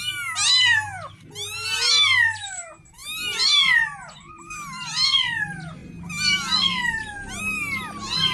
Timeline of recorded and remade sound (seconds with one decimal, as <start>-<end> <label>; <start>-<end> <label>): 0.0-8.3 recorded